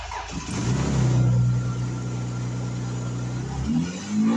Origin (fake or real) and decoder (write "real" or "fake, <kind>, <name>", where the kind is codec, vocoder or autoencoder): real